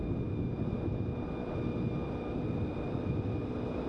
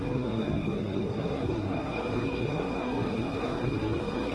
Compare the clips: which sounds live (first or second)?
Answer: first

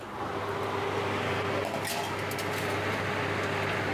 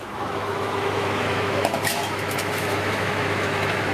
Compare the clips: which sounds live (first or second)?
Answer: first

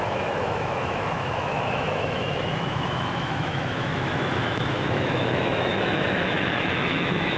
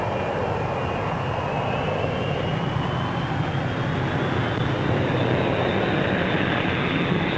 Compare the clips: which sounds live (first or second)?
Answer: second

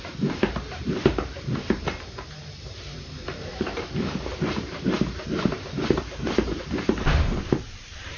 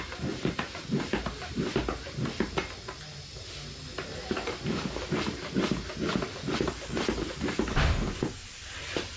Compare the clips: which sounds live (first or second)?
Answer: second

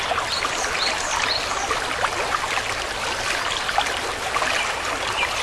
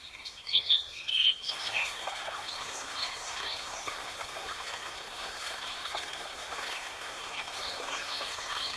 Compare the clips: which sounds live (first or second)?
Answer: first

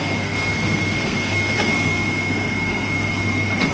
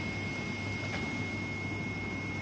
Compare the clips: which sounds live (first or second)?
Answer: second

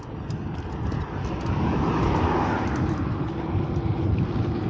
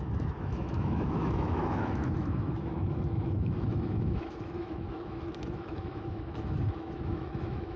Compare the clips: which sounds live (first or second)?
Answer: first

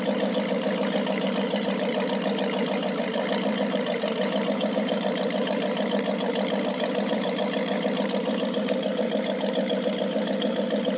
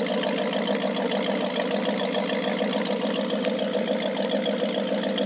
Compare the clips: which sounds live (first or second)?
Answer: second